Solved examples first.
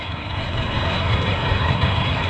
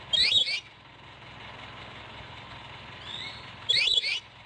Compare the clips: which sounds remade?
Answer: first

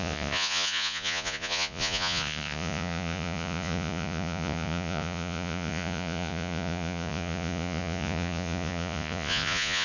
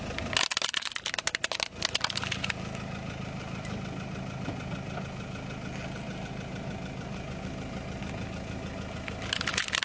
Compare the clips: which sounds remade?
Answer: first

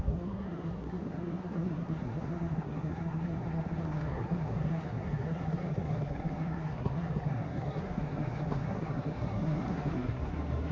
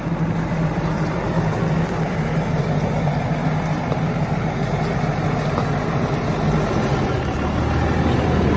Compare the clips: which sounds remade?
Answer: first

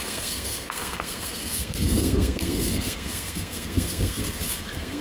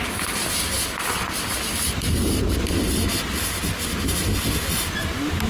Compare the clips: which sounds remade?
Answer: first